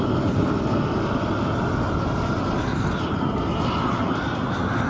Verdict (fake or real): real